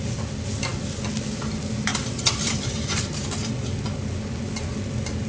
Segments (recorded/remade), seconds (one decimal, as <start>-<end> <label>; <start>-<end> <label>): 0.0-1.9 recorded; 1.9-3.2 remade; 3.2-5.3 recorded